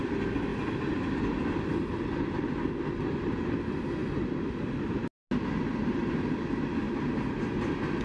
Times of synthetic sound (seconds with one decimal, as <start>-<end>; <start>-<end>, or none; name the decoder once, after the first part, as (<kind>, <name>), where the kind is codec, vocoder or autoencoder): none